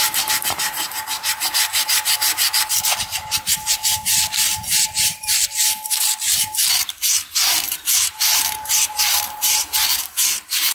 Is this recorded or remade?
remade